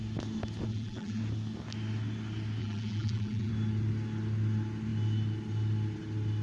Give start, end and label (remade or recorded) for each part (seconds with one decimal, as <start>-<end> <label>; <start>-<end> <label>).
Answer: 0.0-0.7 recorded; 0.7-1.2 remade; 1.2-2.6 recorded; 2.6-3.5 remade; 3.5-6.4 recorded